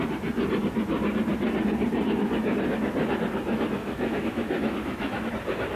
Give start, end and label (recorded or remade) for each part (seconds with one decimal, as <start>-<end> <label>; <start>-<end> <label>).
0.0-3.8 recorded; 3.8-5.3 remade; 5.3-5.8 recorded